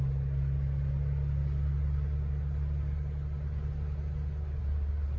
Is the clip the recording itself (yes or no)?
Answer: yes